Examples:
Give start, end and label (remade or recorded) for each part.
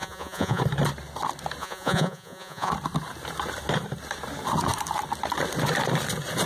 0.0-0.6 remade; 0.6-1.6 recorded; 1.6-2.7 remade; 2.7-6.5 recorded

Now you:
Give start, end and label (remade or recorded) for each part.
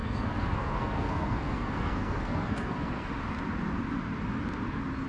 0.0-3.1 remade; 3.1-5.1 recorded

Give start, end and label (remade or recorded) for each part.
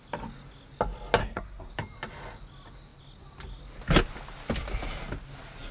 0.0-1.2 recorded; 1.2-1.7 remade; 1.7-5.7 recorded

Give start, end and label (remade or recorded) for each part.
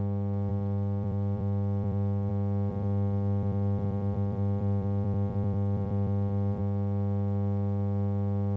0.0-0.5 recorded; 0.5-2.3 remade; 2.3-2.7 recorded; 2.7-6.6 remade; 6.6-8.6 recorded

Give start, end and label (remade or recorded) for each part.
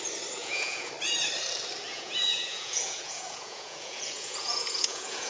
0.0-0.4 recorded; 0.4-0.9 remade; 0.9-1.9 recorded; 1.9-5.3 remade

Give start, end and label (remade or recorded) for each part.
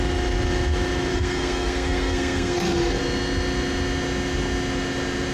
0.0-1.1 recorded; 1.1-3.0 remade; 3.0-5.3 recorded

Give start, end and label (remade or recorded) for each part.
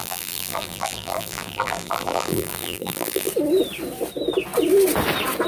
0.0-3.3 remade; 3.3-5.5 recorded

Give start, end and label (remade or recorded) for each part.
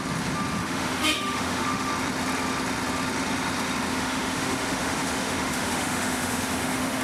0.0-0.6 recorded; 0.6-1.9 remade; 1.9-3.9 recorded; 3.9-7.0 remade